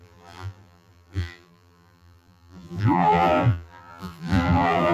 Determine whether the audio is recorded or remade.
remade